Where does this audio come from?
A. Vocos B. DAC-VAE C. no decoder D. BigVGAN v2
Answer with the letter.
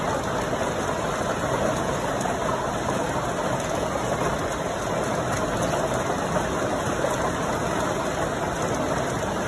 C